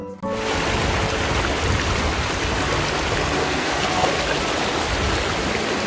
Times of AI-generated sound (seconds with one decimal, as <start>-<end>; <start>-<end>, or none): 3.4-4.1